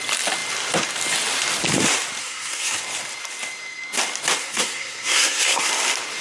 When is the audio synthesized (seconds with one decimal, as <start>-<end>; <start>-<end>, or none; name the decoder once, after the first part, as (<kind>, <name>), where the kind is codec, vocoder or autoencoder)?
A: 2.2-2.8 (codec, SNAC); 4.4-5.7